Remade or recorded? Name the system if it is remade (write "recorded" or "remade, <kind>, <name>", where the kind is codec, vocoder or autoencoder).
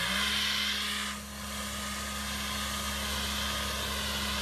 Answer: recorded